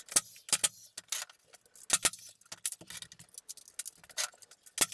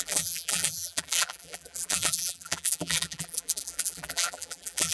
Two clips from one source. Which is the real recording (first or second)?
first